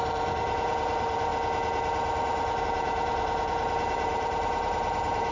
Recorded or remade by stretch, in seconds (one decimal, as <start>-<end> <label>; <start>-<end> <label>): 0.0-1.3 remade; 1.3-2.6 recorded; 2.6-5.3 remade